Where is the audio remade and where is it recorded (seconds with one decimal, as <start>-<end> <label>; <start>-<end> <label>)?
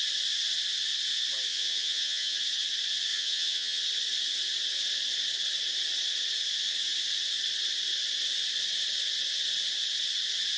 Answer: 0.0-1.5 recorded; 1.5-2.4 remade; 2.4-3.1 recorded; 3.1-3.8 remade; 3.8-10.6 recorded